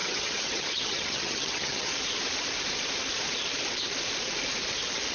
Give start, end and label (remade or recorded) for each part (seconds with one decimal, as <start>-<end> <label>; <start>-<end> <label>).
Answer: 0.0-1.9 remade; 1.9-5.1 recorded